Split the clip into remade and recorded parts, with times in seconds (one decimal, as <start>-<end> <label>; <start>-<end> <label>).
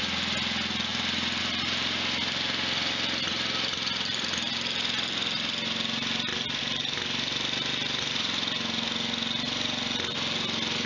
0.0-10.9 recorded